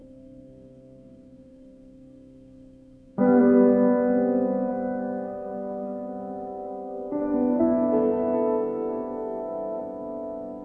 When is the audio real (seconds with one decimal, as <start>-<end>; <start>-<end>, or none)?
3.4-4.7; 9.8-10.6